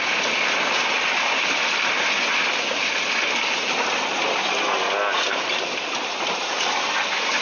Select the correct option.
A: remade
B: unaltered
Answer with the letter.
B